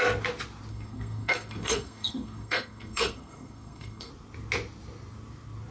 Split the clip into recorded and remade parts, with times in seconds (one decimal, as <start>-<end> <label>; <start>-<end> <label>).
0.0-0.7 recorded; 0.7-4.1 remade; 4.1-5.7 recorded